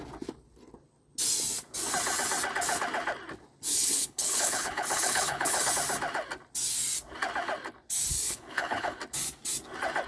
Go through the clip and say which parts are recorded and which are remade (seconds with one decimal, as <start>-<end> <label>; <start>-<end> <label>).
0.0-3.7 recorded; 3.7-5.7 remade; 5.7-8.1 recorded; 8.1-9.0 remade; 9.0-10.1 recorded